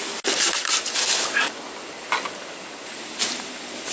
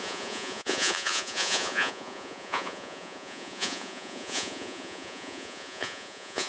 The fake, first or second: second